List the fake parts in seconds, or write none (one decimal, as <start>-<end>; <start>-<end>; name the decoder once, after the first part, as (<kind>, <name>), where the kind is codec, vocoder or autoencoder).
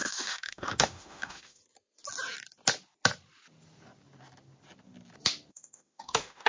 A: 0.0-1.6 (autoencoder, DAC-VAE); 5.5-6.5